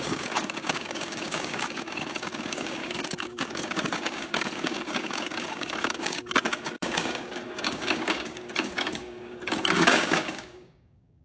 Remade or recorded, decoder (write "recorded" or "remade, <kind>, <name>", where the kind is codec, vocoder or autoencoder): remade, codec, DAC